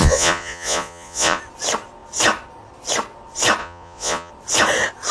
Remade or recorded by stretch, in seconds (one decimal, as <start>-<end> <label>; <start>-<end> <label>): 0.0-1.4 remade; 1.4-3.6 recorded; 3.6-4.3 remade; 4.3-5.1 recorded